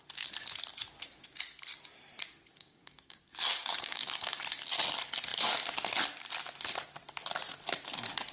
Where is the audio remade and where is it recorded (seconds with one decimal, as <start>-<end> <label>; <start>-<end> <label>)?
0.0-2.5 recorded; 2.5-4.4 remade; 4.4-8.3 recorded